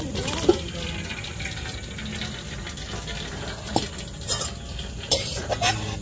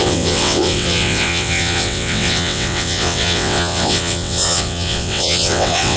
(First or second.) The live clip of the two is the first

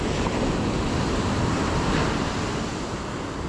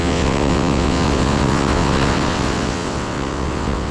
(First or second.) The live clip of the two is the first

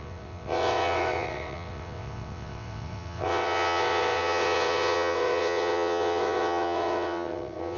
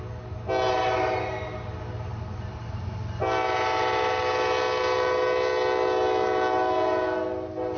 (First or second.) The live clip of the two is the second